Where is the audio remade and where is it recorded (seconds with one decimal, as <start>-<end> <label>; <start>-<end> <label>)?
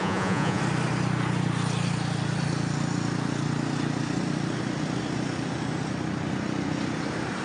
0.0-0.6 remade; 0.6-7.4 recorded